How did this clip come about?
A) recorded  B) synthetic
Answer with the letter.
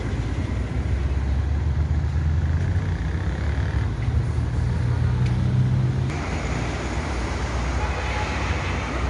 A